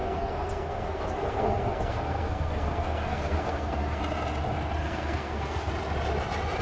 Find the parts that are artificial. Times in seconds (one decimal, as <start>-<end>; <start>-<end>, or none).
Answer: 0.0-4.0; 4.8-5.7

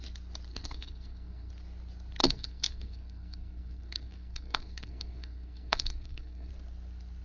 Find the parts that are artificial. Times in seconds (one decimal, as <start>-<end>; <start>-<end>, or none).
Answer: 0.5-1.5; 2.2-6.5

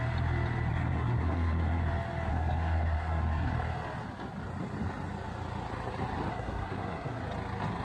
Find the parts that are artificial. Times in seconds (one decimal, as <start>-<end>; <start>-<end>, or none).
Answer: 0.7-1.8; 2.3-3.5; 6.3-7.2

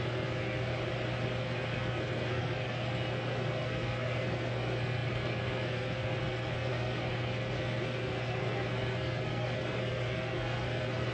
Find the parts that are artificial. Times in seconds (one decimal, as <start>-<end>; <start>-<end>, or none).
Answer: 0.0-0.7; 1.4-11.1

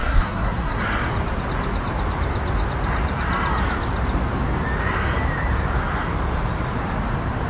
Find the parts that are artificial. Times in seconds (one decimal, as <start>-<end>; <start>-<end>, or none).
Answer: 0.0-0.8

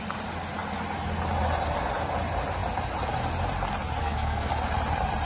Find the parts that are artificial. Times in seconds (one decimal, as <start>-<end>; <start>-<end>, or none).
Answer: 4.0-4.5

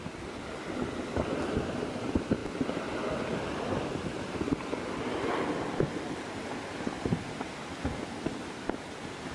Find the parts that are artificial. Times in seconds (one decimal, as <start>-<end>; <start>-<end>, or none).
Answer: none

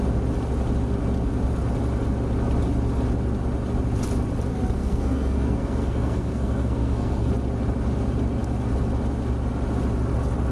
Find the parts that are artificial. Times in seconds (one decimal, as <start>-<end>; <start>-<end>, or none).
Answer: 4.5-7.3